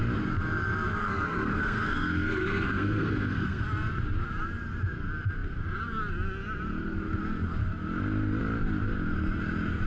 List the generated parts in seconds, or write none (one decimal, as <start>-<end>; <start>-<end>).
1.0-3.6

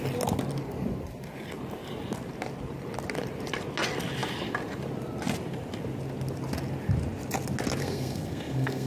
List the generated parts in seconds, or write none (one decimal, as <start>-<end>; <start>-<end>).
7.8-8.9